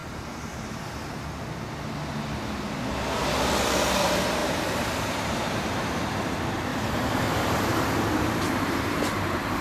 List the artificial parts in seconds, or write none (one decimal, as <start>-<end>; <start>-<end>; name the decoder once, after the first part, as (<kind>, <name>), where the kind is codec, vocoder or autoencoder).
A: 0.0-0.7 (vocoder, BigVGAN v2); 4.4-6.0; 6.7-9.6

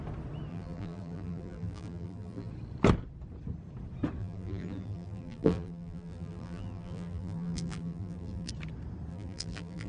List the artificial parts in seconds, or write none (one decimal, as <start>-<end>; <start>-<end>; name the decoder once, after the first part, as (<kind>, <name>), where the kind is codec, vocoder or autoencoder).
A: 0.5-2.5 (vocoder, BigVGAN v2); 4.2-8.5; 9.1-9.9

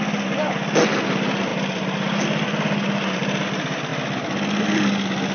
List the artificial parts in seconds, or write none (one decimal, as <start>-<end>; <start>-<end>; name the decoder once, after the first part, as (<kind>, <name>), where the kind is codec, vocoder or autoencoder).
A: none

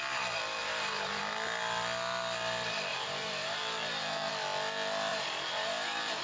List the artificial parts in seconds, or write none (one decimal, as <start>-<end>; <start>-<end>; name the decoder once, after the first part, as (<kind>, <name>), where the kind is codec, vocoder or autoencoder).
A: 0.6-1.2 (vocoder, BigVGAN v2); 2.9-4.3; 5.1-6.2

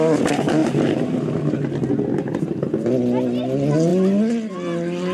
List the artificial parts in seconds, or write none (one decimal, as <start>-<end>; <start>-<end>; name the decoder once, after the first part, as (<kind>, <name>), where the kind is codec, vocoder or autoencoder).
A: none

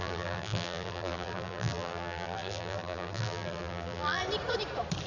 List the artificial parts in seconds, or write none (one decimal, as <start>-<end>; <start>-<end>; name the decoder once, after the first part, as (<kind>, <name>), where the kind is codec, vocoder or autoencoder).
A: 0.0-4.2 (vocoder, BigVGAN v2)

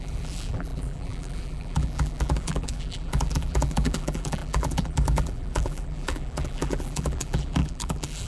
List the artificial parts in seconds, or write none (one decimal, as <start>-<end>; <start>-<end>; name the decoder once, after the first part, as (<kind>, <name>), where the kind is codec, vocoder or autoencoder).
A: 0.0-8.3 (vocoder, BigVGAN v2)

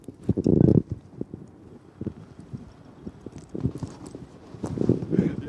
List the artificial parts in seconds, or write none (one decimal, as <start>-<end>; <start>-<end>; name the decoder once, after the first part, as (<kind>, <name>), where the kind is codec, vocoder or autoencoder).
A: none